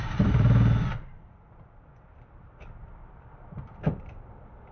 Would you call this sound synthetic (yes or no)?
yes